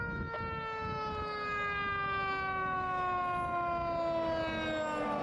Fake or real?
real